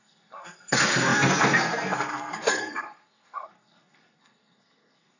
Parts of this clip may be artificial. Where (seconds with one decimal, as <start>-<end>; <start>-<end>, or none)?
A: 0.0-5.2